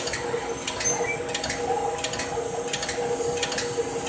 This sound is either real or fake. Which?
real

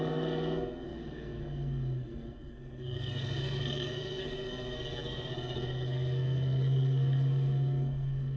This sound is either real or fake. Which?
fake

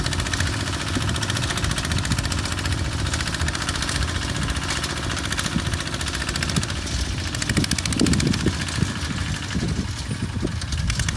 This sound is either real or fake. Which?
real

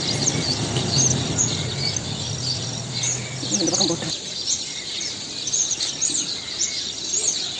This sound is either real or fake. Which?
real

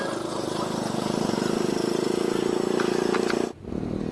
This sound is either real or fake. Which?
real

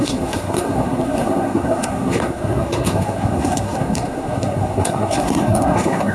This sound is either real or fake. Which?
fake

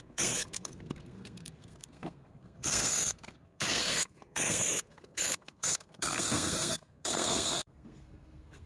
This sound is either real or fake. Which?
fake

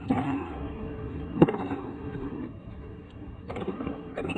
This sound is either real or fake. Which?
fake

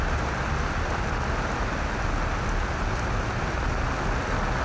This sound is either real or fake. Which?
real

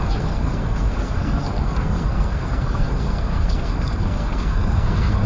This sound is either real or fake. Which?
fake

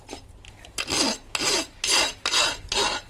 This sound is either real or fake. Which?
real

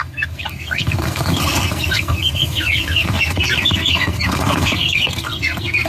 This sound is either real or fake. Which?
fake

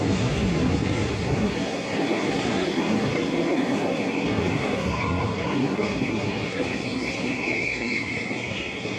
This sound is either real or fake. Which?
fake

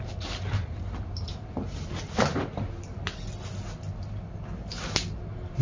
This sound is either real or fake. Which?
real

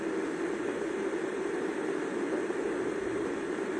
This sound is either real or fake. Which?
real